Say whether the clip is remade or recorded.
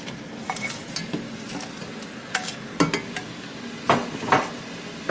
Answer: recorded